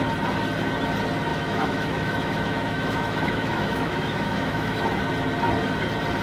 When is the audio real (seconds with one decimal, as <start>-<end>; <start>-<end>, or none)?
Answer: 0.0-1.3; 5.0-6.2